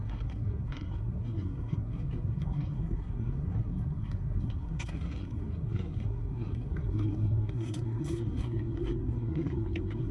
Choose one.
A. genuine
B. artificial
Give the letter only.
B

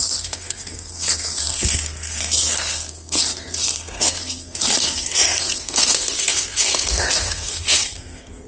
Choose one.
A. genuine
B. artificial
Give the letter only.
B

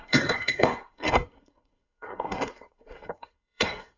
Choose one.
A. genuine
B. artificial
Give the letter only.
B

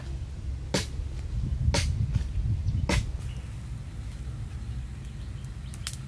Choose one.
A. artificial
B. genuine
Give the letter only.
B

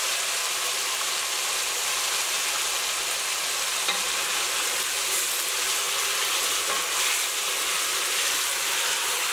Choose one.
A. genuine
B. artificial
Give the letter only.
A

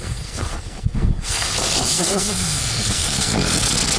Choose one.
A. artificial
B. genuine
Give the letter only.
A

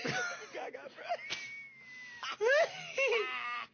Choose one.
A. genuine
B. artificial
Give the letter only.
A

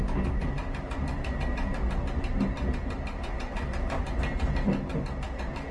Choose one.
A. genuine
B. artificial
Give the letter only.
A